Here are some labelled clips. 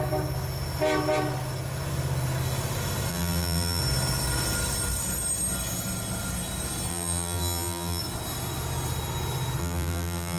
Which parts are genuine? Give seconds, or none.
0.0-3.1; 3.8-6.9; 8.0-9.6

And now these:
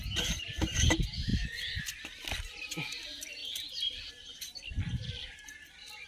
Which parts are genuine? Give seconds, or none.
0.0-1.3; 1.8-3.4; 4.1-6.1